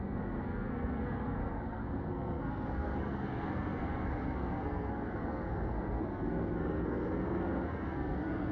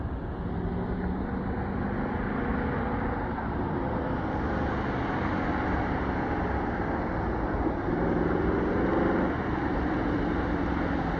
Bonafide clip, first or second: second